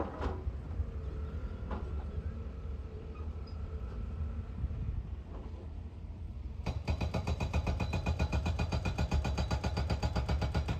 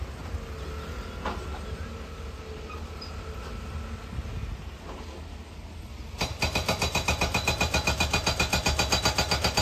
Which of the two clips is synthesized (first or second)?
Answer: first